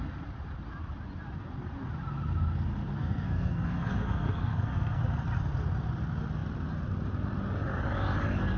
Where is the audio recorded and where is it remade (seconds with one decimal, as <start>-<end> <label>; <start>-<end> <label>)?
0.0-3.0 recorded; 3.0-5.0 remade; 5.0-8.6 recorded